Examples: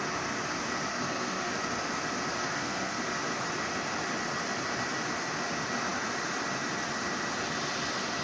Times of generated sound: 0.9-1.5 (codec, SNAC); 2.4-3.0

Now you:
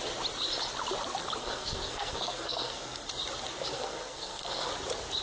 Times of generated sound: 1.4-3.1 (codec, SNAC); 3.7-4.7